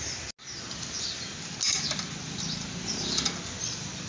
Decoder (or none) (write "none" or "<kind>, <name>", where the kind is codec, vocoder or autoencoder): none